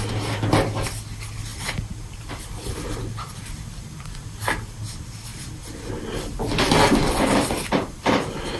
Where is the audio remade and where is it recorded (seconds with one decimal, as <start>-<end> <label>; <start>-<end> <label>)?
0.0-1.5 recorded; 1.5-3.4 remade; 3.4-8.6 recorded